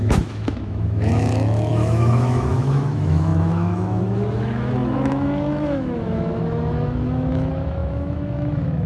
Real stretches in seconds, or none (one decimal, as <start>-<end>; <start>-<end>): none